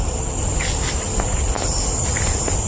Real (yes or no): yes